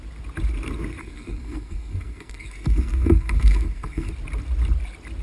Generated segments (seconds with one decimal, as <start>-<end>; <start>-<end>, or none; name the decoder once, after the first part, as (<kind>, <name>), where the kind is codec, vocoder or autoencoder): 1.0-4.1 (codec, SNAC)